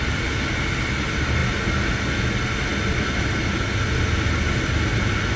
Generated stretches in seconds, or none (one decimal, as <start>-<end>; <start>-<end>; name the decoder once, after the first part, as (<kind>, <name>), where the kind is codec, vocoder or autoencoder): none